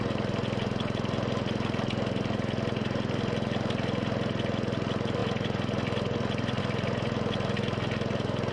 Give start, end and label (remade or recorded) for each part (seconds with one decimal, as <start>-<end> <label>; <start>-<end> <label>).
0.0-8.5 recorded